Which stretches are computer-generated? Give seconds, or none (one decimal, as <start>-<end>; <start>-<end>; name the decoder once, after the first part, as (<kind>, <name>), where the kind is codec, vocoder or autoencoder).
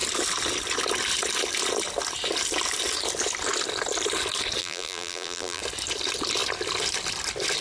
4.6-5.6 (vocoder, BigVGAN v2)